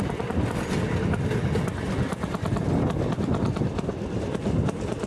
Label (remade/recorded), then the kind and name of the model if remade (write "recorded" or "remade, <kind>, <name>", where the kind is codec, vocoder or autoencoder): recorded